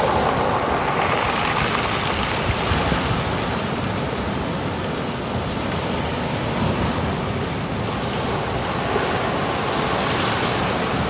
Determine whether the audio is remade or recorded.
recorded